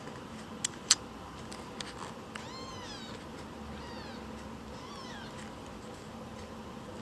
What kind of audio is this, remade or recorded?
recorded